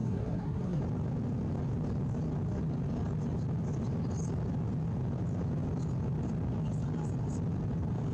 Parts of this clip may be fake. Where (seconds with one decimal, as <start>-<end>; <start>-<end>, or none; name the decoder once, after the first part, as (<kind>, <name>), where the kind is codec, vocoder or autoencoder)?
0.0-0.8 (codec, SNAC)